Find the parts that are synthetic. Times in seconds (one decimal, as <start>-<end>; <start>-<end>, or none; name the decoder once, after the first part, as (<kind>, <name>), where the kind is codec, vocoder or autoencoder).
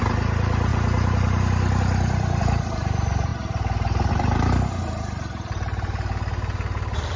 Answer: 0.0-7.2 (vocoder, BigVGAN v2)